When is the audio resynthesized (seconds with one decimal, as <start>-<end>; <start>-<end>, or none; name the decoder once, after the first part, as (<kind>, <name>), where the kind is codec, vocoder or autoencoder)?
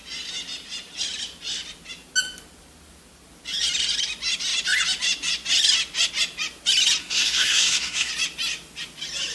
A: 7.0-8.1 (codec, SNAC)